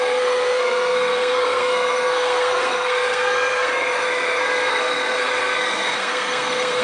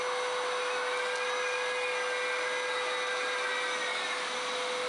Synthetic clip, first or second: first